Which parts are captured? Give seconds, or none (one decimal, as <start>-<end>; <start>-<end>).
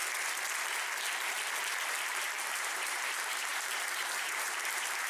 0.0-2.1